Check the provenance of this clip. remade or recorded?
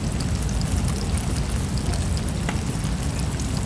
recorded